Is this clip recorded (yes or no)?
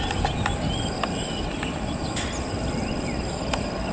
yes